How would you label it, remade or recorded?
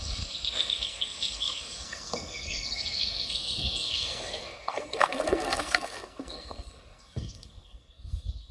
remade